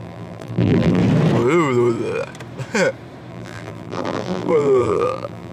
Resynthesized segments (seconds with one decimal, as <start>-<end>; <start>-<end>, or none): 0.0-1.0; 3.3-5.5